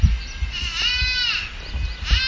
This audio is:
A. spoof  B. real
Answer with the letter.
B